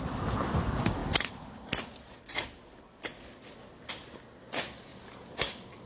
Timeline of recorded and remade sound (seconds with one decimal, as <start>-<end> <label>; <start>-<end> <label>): 0.0-5.9 recorded

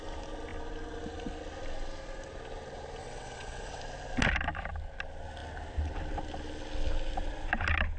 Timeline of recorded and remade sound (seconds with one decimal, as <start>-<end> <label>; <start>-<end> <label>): 0.0-3.0 recorded; 3.0-3.8 remade; 3.8-8.0 recorded

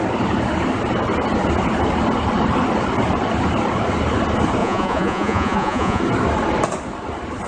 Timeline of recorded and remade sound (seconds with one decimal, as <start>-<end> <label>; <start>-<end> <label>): 0.0-4.6 recorded; 4.6-6.0 remade; 6.0-7.5 recorded

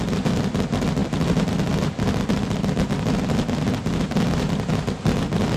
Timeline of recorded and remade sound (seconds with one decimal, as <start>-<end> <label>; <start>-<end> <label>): 0.0-5.6 recorded